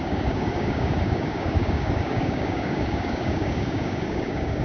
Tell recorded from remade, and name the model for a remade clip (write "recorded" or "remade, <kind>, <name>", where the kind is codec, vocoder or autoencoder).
remade, codec, DAC